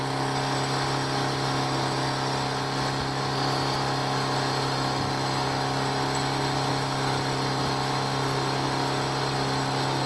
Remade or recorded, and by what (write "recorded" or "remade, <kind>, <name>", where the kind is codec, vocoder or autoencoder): recorded